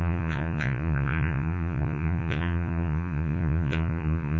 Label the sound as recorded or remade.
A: remade